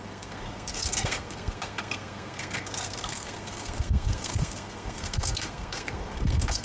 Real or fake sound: fake